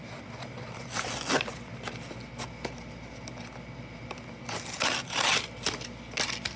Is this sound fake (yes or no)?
no